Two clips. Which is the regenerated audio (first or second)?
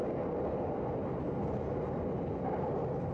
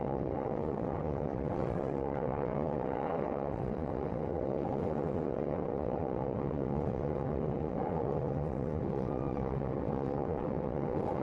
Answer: second